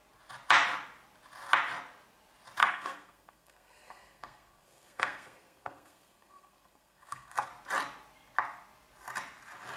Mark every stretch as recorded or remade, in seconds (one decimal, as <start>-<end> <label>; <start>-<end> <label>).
0.0-2.6 recorded; 2.6-7.5 remade; 7.5-9.8 recorded